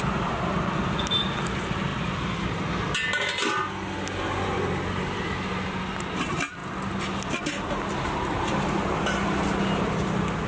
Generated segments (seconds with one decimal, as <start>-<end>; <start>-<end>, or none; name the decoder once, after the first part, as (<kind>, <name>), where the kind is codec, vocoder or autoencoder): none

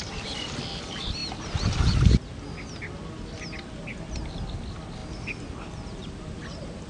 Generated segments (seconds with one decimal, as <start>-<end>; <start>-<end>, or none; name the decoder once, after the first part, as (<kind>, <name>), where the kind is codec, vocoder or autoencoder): none

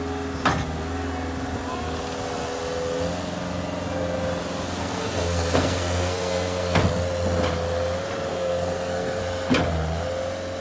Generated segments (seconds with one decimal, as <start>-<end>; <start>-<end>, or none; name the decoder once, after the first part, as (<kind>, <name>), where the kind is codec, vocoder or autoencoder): 4.8-6.8 (codec, SNAC); 8.3-9.2

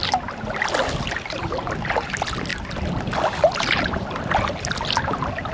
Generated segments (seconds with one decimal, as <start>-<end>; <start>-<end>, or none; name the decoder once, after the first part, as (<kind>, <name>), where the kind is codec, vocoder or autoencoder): none

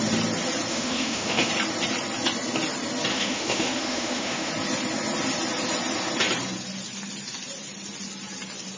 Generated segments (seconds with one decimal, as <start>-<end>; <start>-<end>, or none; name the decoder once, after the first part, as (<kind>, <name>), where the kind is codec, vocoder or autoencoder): 0.7-1.5 (autoencoder, DAC-VAE); 3.1-4.5

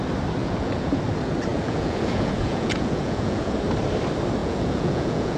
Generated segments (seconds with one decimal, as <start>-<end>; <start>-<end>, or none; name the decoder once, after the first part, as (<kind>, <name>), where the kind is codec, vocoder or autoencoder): 0.4-1.0 (vocoder, Vocos); 1.5-3.5; 4.4-5.4